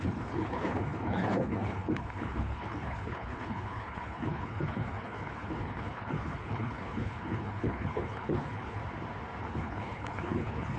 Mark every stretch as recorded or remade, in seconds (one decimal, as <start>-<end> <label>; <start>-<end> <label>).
0.0-8.8 remade; 8.8-9.4 recorded; 9.4-10.8 remade